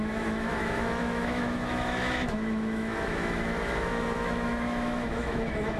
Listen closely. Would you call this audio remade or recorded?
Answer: remade